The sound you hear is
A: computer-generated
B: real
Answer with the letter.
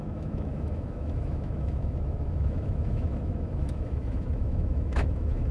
A